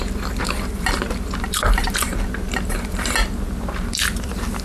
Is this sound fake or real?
fake